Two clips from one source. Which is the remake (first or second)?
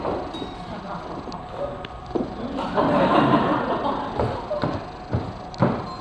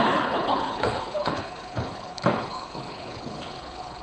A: second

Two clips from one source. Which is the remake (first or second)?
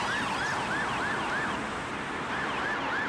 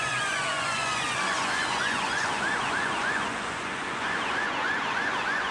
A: second